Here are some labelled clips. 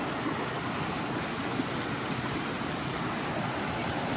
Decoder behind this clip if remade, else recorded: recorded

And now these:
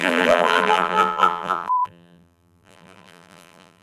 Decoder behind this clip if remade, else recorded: remade, vocoder, BigVGAN v2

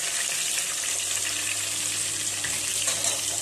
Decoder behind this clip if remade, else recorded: recorded